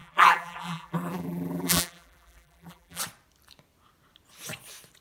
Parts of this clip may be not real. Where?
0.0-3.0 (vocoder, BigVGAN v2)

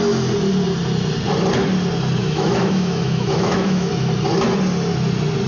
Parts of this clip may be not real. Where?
2.2-3.9 (autoencoder, DAC-VAE)

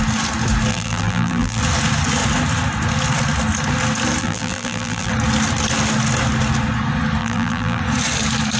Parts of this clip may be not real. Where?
0.7-1.6 (vocoder, BigVGAN v2); 4.2-5.1; 7.2-7.8

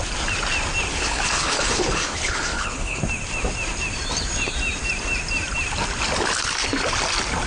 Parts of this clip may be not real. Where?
0.9-3.0 (codec, HILCodec)

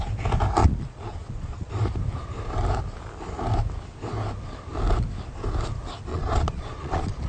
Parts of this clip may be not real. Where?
0.6-1.7 (vocoder, Vocos); 6.1-7.3

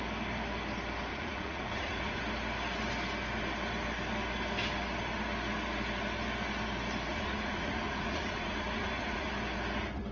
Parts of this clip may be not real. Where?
1.1-2.2 (vocoder, Vocos); 7.1-9.3

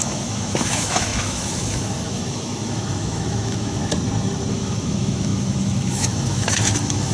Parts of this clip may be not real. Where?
0.0-3.8 (autoencoder, DAC-VAE); 4.5-7.1